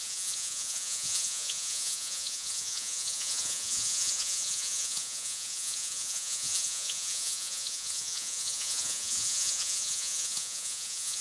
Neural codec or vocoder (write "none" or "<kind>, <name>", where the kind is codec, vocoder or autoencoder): vocoder, Vocos